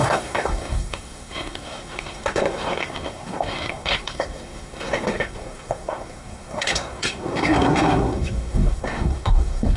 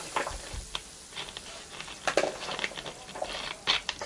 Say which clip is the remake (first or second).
first